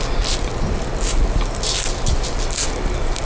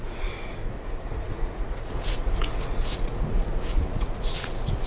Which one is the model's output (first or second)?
second